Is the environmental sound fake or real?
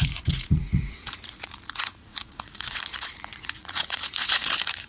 fake